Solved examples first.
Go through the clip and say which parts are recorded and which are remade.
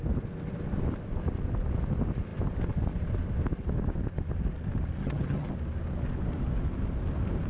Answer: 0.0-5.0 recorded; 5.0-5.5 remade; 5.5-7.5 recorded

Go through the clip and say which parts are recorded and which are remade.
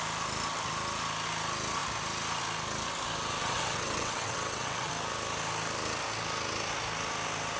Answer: 0.0-3.4 recorded; 3.4-4.9 remade; 4.9-7.6 recorded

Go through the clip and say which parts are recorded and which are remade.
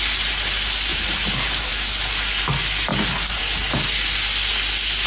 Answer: 0.0-0.9 recorded; 0.9-1.7 remade; 1.7-2.9 recorded; 2.9-3.4 remade; 3.4-5.1 recorded